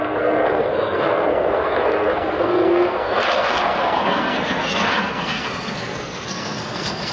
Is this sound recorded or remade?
remade